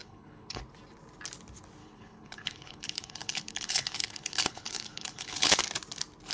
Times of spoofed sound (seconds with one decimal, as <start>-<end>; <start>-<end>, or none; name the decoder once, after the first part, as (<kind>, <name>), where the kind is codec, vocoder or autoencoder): 0.0-0.6 (codec, HILCodec); 1.8-5.5